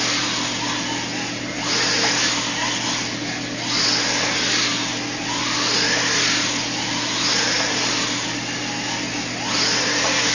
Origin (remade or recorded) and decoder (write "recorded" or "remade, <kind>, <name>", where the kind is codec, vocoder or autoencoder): recorded